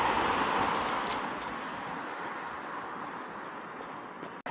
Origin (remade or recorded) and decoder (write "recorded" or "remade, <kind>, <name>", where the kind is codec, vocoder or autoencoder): recorded